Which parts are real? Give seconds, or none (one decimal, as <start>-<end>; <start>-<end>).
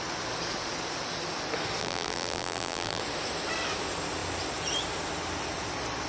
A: 0.0-1.8; 3.0-6.1